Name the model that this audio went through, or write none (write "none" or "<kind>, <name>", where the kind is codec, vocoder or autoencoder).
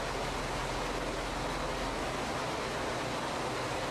none